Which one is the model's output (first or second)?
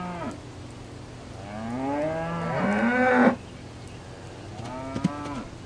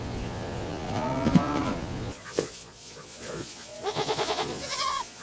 second